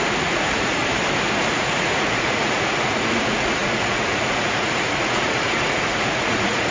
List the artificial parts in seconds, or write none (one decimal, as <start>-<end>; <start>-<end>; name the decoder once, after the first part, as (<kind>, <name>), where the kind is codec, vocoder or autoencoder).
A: 0.0-0.8 (vocoder, Vocos); 1.4-6.7